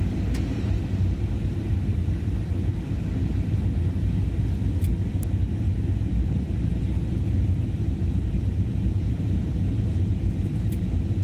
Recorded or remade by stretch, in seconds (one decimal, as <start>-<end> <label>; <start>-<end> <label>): 0.0-6.1 recorded; 6.1-6.8 remade; 6.8-11.2 recorded